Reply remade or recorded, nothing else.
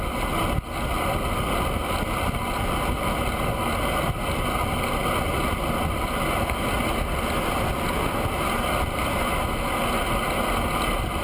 recorded